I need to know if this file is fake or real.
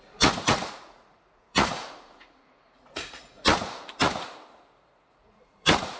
fake